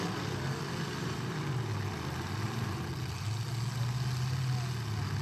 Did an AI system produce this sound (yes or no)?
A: no